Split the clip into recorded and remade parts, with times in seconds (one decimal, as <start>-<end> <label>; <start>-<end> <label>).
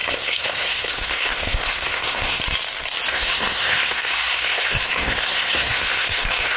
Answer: 0.0-2.4 remade; 2.4-3.1 recorded; 3.1-6.6 remade